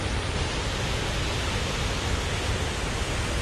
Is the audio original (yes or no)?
yes